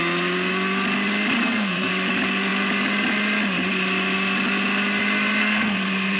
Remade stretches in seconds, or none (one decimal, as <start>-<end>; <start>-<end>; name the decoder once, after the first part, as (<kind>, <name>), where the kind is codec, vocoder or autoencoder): 1.4-1.9 (codec, SNAC); 5.4-6.2